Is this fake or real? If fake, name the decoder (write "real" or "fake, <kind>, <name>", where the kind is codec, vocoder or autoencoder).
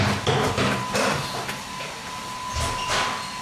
real